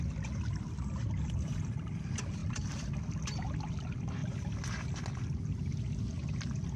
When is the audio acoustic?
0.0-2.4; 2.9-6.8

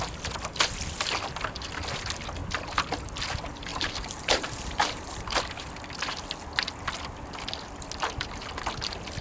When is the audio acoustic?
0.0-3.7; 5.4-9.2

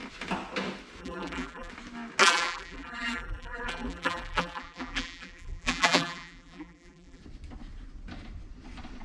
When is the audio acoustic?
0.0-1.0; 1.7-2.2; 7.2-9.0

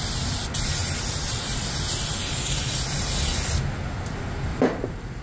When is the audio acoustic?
0.0-4.5

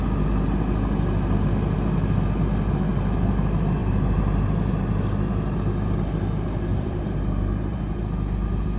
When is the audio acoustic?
0.0-3.8; 4.8-6.7; 8.0-8.8

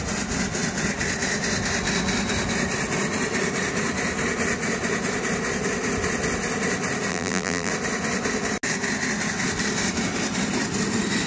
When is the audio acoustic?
0.0-7.1; 7.7-11.3

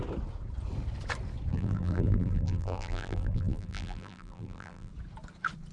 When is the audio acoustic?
0.0-1.5; 4.9-5.7

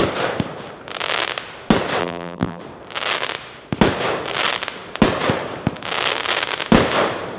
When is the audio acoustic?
0.0-2.0; 2.6-7.4